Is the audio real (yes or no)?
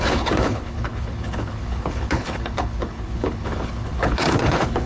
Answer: no